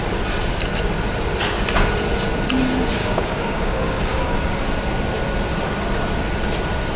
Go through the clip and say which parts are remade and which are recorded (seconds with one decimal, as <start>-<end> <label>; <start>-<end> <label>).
0.0-3.0 recorded; 3.0-4.6 remade; 4.6-7.0 recorded

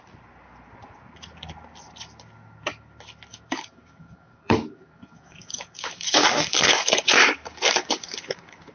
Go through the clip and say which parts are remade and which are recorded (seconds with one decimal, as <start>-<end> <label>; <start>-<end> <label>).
0.0-3.3 recorded; 3.3-8.7 remade

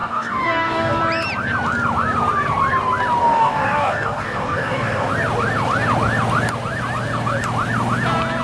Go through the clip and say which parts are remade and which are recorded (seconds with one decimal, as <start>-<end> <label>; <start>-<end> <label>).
0.0-1.0 remade; 1.0-3.2 recorded; 3.2-5.1 remade; 5.1-8.4 recorded

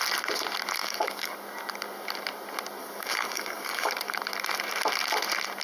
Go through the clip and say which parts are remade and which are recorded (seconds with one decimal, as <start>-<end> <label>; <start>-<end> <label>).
0.0-0.8 recorded; 0.8-1.3 remade; 1.3-2.8 recorded; 2.8-3.9 remade; 3.9-5.6 recorded